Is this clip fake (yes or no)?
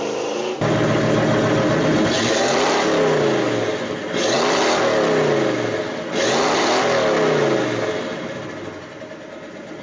no